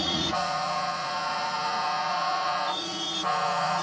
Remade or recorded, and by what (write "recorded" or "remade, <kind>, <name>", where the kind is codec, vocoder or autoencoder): remade, vocoder, Vocos